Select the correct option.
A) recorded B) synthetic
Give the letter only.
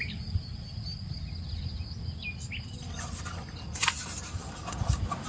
A